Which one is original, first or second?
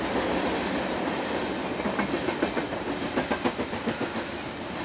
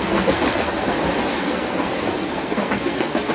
first